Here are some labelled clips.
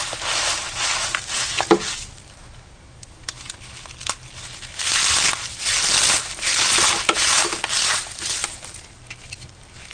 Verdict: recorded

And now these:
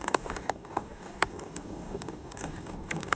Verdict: remade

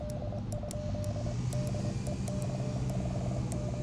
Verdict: recorded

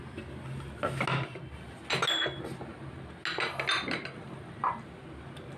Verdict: recorded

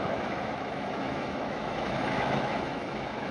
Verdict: remade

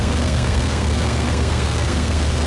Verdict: remade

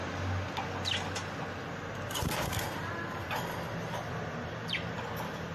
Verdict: recorded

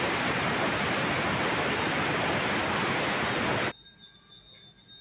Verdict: recorded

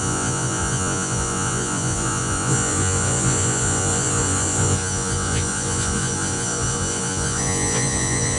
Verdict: remade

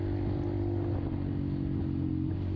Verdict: recorded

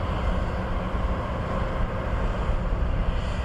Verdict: recorded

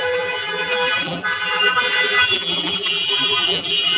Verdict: remade